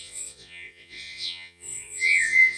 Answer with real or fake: fake